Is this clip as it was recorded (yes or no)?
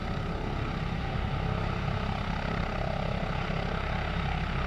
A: yes